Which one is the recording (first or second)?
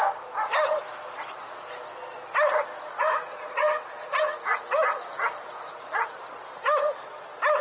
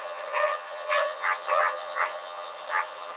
first